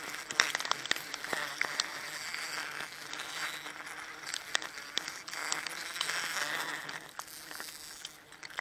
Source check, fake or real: real